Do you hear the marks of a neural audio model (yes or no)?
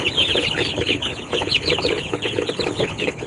yes